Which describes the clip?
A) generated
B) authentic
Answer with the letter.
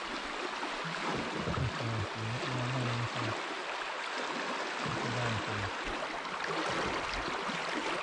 B